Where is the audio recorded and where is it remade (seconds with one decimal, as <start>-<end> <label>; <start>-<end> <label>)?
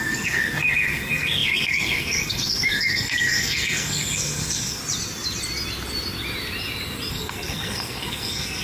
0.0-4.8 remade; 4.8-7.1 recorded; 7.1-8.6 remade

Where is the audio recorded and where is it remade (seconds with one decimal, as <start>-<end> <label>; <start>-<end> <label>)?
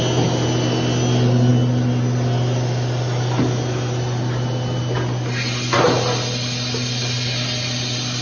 0.0-8.2 recorded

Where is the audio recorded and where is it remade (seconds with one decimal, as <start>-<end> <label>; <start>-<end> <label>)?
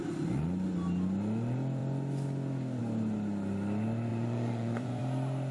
0.0-4.1 recorded; 4.1-5.0 remade; 5.0-5.5 recorded